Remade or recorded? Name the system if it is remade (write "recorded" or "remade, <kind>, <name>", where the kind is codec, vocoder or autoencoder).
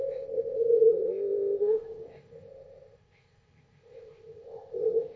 remade, codec, ZipCodec